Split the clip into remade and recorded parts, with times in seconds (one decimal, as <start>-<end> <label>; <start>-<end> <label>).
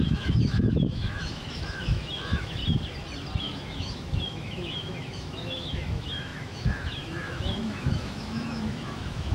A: 0.0-2.6 remade; 2.6-3.4 recorded; 3.4-9.3 remade